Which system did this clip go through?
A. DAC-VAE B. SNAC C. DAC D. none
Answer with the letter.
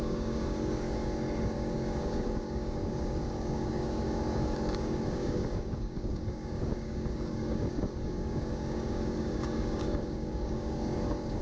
C